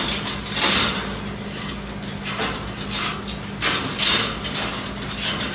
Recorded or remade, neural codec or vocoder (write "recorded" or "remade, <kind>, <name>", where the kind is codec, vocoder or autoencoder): recorded